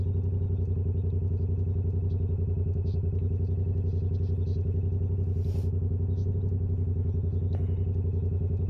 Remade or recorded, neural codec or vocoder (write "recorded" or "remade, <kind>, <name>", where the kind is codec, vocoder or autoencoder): recorded